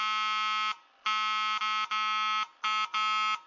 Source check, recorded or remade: recorded